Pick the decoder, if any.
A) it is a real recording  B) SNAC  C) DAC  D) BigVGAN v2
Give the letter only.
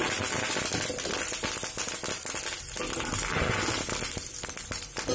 A